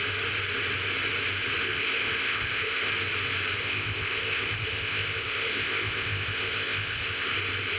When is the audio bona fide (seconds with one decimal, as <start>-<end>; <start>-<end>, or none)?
0.0-1.6; 2.9-3.6; 7.3-7.8